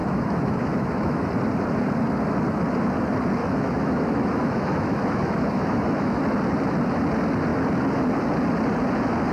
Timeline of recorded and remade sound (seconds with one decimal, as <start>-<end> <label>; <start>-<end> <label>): 0.0-1.3 remade; 1.3-3.4 recorded; 3.4-6.2 remade; 6.2-9.3 recorded